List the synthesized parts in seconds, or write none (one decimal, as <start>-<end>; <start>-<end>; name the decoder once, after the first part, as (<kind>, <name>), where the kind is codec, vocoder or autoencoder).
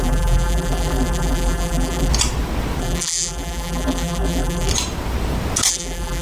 0.0-2.1 (vocoder, BigVGAN v2); 2.8-4.7; 5.7-6.2